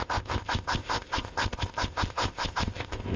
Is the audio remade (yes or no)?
yes